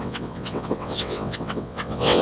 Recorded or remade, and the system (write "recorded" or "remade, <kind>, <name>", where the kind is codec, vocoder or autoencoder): remade, vocoder, WaveNeXt